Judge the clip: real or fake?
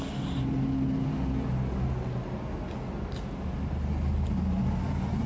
real